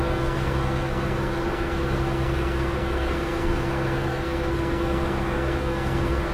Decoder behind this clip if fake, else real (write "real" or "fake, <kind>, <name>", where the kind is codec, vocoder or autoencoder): fake, codec, SNAC